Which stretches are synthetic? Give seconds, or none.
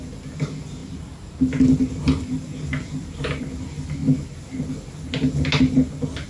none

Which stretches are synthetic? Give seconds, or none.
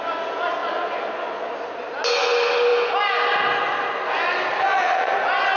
0.6-1.5 (vocoder, Vocos); 4.6-5.1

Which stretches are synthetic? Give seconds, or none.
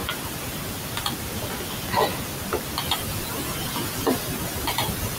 0.0-1.5 (vocoder, BigVGAN v2); 2.1-3.3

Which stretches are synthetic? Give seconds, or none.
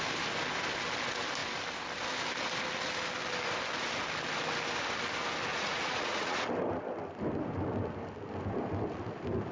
5.5-6.5 (vocoder, Vocos)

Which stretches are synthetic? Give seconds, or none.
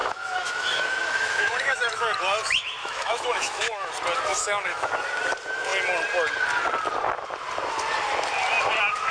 0.0-2.0 (autoencoder, DAC-VAE); 2.8-3.9; 4.3-4.9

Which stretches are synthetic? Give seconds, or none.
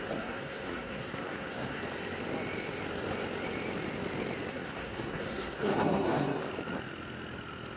0.0-1.8 (codec, SNAC); 4.5-6.4